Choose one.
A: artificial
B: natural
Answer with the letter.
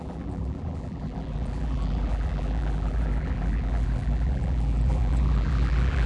A